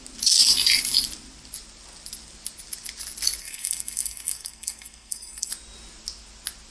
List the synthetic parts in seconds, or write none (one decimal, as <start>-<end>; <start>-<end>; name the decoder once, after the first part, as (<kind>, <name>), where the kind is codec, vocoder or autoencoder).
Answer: 3.4-5.5 (codec, SNAC)